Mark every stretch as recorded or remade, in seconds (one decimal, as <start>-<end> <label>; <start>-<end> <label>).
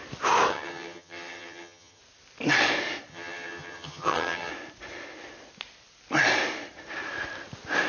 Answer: 0.0-0.5 recorded; 0.5-2.0 remade; 2.0-3.1 recorded; 3.1-4.5 remade; 4.5-7.9 recorded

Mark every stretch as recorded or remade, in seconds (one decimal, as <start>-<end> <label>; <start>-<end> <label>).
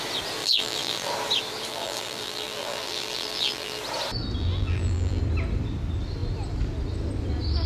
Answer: 0.0-0.4 recorded; 0.4-1.1 remade; 1.1-1.7 recorded; 1.7-3.8 remade; 3.8-4.4 recorded; 4.4-5.2 remade; 5.2-7.7 recorded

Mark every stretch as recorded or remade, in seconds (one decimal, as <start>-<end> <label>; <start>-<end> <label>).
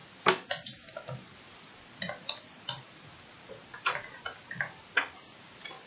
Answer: 0.0-5.9 recorded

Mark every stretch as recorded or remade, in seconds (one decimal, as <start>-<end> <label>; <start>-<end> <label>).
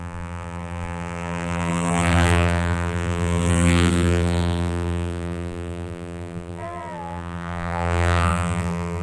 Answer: 0.0-9.0 remade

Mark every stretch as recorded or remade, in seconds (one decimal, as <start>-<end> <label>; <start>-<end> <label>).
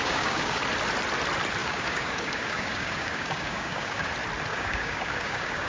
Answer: 0.0-0.6 remade; 0.6-1.6 recorded; 1.6-4.1 remade; 4.1-4.5 recorded; 4.5-5.7 remade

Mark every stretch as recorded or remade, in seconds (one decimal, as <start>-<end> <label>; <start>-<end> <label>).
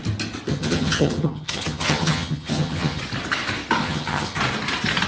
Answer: 0.0-0.5 recorded; 0.5-3.0 remade; 3.0-3.8 recorded; 3.8-4.4 remade; 4.4-5.1 recorded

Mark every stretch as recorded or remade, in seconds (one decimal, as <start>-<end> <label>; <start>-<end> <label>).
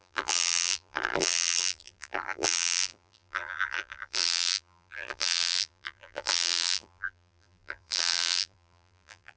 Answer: 0.0-9.4 remade